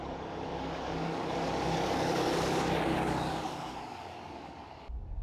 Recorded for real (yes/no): no